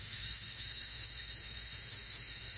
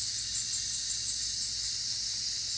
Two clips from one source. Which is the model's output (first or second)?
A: first